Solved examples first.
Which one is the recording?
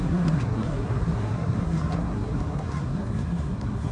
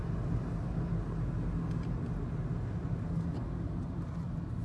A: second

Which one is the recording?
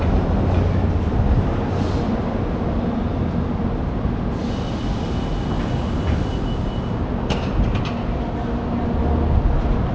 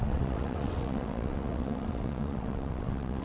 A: first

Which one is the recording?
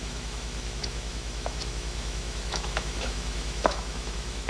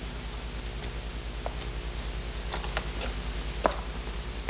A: second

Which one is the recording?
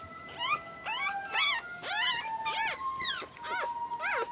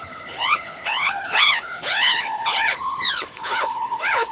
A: first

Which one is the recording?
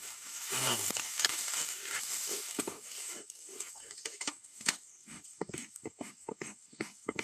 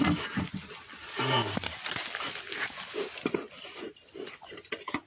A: second